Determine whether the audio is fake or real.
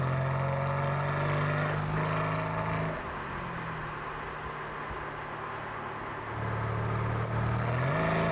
real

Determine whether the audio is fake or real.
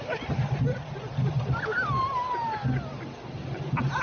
real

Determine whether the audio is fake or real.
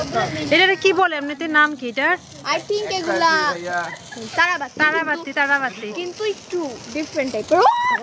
real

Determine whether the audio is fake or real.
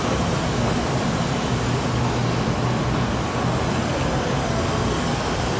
real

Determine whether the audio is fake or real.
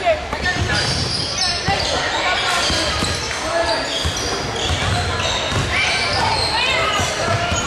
real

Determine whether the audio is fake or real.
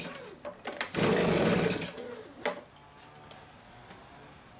real